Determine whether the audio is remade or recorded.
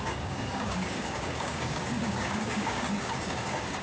remade